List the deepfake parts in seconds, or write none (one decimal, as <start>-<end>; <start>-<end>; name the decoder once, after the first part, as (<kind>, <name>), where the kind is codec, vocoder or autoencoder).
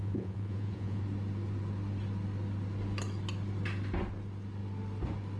0.0-1.0 (vocoder, Vocos)